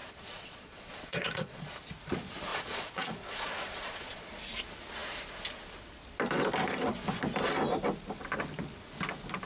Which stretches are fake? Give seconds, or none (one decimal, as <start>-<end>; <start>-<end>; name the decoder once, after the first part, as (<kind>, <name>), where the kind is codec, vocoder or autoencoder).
0.0-1.7 (vocoder, Vocos); 2.5-4.3